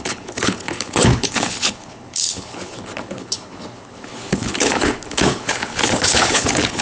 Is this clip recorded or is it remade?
remade